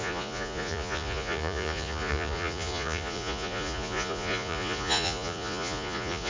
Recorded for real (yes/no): no